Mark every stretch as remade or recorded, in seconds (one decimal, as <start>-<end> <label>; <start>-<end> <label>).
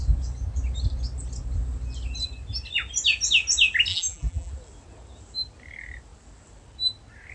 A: 0.0-3.9 recorded; 3.9-4.5 remade; 4.5-7.3 recorded